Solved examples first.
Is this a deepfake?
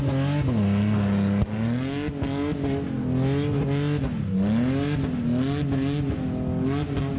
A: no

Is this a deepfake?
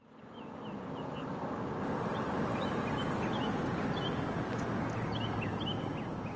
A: no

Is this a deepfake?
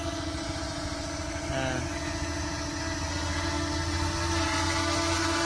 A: no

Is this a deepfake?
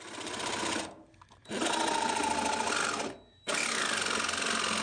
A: no